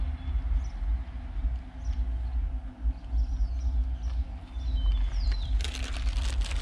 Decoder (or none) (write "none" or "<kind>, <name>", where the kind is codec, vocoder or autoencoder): none